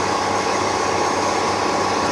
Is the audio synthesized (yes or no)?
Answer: no